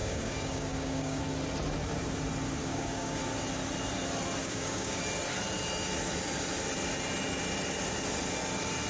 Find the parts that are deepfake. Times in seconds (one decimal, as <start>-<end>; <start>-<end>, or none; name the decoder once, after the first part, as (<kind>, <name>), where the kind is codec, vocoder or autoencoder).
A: 0.0-1.2 (codec, DAC); 2.6-3.2; 4.4-5.0